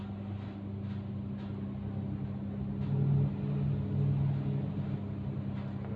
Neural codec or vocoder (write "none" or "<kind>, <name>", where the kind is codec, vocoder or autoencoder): none